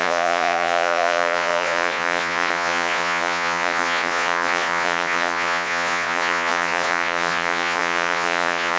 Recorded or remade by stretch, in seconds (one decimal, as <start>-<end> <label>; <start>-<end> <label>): 0.0-8.8 remade